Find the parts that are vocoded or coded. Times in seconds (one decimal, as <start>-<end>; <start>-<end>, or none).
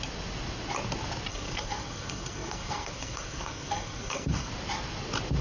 1.3-4.5